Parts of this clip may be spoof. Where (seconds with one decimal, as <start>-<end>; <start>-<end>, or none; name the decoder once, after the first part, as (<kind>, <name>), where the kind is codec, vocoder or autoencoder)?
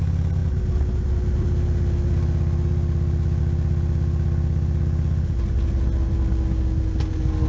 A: none